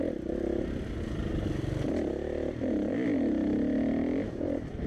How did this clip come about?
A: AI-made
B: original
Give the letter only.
B